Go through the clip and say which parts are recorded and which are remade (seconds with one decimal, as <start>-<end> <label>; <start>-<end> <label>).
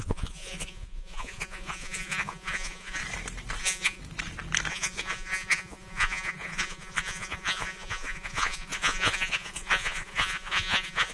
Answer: 0.0-3.0 remade; 3.0-3.6 recorded; 3.6-4.0 remade; 4.0-4.7 recorded; 4.7-11.1 remade